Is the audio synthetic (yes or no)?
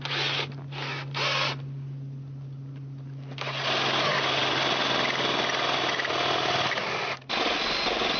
no